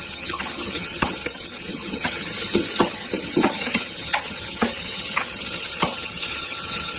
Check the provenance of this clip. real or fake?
fake